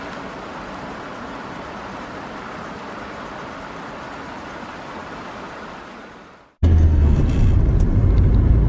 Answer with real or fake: real